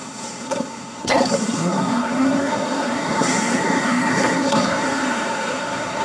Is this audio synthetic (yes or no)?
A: yes